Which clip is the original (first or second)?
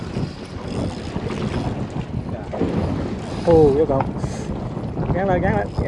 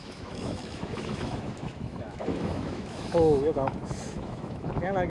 first